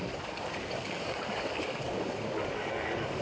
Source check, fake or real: fake